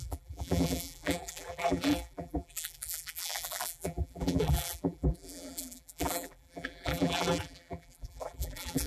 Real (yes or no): no